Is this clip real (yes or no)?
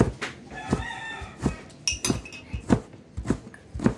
yes